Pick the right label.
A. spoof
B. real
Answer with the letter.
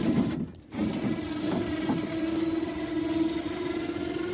B